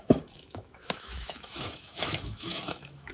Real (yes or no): no